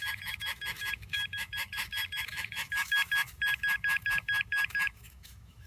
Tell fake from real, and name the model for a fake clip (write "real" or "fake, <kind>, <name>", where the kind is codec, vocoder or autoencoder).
fake, autoencoder, DAC-VAE